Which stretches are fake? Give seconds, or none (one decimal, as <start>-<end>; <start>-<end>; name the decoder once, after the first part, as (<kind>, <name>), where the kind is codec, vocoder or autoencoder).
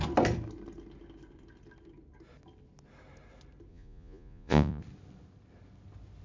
3.7-4.8 (vocoder, Vocos)